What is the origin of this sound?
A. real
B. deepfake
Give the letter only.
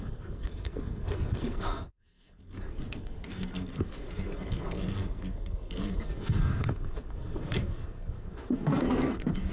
B